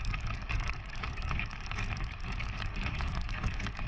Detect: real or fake fake